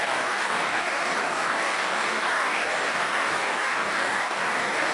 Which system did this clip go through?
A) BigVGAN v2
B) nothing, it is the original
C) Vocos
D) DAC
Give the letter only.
D